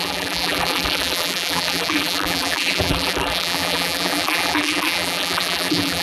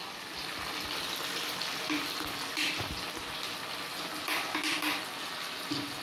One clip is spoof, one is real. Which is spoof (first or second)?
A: first